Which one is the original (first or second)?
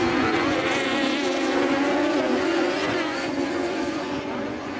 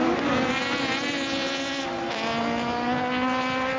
second